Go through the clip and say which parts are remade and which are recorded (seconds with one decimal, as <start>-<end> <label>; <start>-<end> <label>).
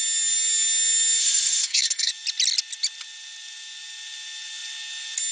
0.0-1.2 recorded; 1.2-2.1 remade; 2.1-5.3 recorded